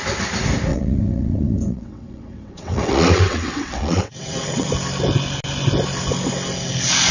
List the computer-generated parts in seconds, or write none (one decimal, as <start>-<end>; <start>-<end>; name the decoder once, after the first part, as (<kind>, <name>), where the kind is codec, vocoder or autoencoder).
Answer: 0.7-4.7 (vocoder, WaveNeXt)